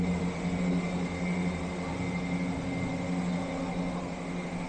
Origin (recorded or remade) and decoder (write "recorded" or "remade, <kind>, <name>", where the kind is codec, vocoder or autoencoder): recorded